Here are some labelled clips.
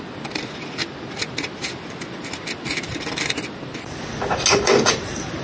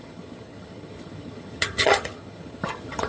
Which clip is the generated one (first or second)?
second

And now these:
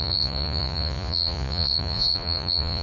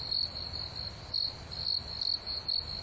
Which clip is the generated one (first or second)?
first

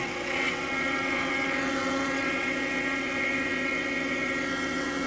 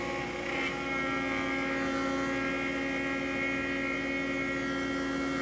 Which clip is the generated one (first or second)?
first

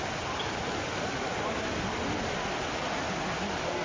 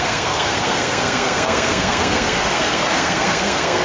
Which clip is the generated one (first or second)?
second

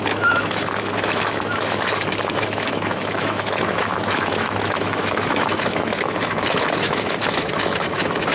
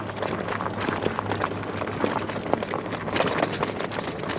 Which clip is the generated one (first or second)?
first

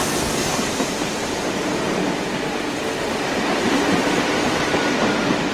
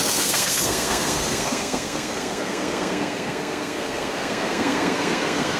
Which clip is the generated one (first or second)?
second